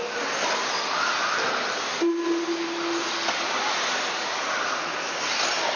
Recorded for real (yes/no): yes